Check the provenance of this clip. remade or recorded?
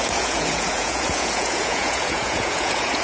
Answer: remade